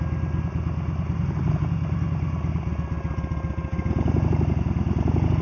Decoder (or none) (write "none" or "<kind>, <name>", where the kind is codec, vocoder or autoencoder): none